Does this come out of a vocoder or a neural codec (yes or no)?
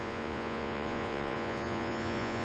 yes